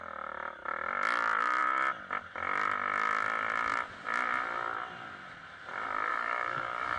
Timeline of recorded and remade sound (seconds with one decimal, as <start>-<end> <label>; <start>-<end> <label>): 0.0-6.1 recorded; 6.1-7.0 remade